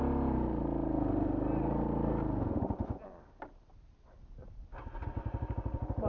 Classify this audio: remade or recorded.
recorded